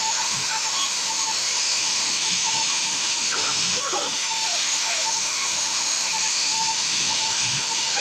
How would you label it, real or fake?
fake